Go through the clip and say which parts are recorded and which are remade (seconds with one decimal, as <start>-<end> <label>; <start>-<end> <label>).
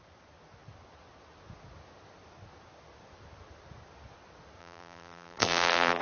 0.0-4.6 recorded; 4.6-6.0 remade